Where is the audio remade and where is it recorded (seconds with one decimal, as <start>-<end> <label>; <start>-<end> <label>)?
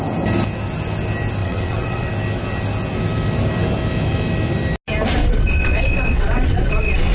0.0-1.4 recorded; 1.4-2.1 remade; 2.1-5.2 recorded; 5.2-7.1 remade